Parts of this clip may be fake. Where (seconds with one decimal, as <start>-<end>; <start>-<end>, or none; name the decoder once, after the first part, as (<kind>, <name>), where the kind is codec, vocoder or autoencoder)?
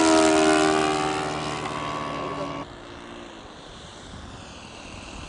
none